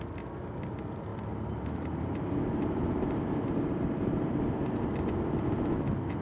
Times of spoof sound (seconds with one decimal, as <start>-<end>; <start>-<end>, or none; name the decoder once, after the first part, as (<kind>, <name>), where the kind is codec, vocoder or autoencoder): 1.1-4.8 (vocoder, BigVGAN v2)